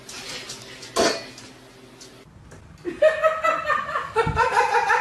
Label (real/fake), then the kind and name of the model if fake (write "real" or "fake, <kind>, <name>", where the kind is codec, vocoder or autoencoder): real